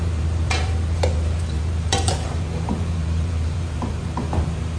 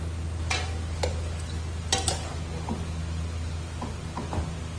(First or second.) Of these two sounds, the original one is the second